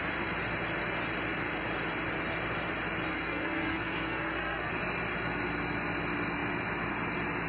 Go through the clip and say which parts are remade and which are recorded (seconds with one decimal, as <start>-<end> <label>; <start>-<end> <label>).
0.0-3.1 recorded; 3.1-4.7 remade; 4.7-7.5 recorded